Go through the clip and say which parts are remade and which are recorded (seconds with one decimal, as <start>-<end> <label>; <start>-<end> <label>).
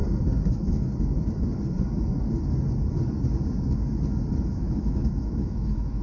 0.0-0.5 recorded; 0.5-0.9 remade; 0.9-4.5 recorded; 4.5-6.0 remade